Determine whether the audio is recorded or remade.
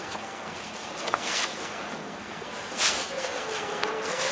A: remade